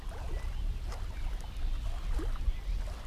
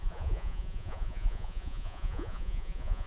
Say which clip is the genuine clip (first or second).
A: first